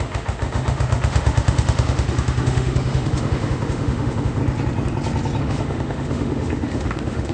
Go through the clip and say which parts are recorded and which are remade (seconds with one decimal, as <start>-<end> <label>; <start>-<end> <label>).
0.0-4.4 remade; 4.4-5.4 recorded; 5.4-7.3 remade